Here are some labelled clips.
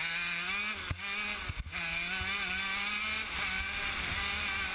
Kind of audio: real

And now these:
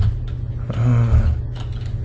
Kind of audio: real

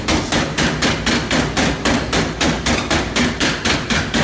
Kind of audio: real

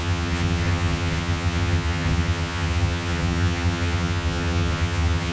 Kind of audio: fake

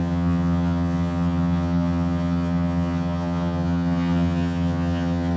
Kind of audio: fake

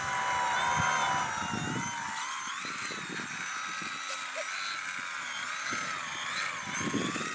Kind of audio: real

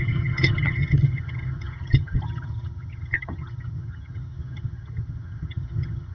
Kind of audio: fake